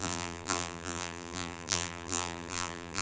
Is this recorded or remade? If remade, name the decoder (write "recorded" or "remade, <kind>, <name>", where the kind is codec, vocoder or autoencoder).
remade, vocoder, BigVGAN v2